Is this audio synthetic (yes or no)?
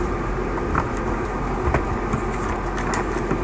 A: no